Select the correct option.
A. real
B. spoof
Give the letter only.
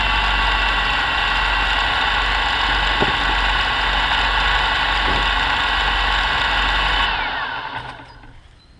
A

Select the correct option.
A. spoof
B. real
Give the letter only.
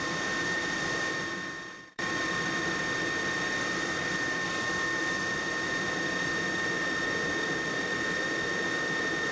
A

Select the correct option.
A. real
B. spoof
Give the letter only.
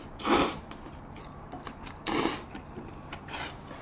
B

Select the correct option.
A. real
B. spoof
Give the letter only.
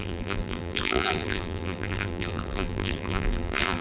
B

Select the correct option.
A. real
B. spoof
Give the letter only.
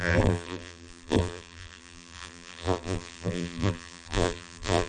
B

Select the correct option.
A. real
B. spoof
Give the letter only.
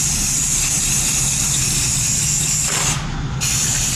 A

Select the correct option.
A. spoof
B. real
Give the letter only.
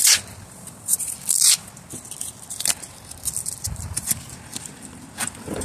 A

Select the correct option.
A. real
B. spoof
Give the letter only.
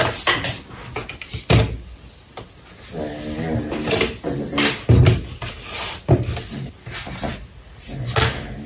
A